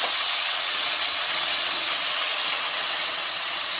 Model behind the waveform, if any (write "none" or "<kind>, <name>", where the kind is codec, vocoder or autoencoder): vocoder, WaveNeXt